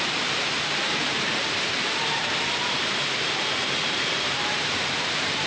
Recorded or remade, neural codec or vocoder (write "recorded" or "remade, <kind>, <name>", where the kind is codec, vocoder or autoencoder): remade, vocoder, BigVGAN v2